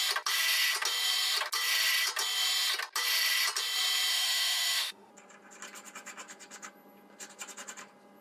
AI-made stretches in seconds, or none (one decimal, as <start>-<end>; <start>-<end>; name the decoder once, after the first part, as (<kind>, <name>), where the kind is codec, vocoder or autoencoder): 4.1-5.1 (autoencoder, DAC-VAE)